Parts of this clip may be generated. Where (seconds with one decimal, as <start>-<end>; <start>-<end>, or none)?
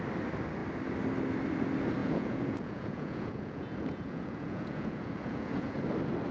2.0-5.8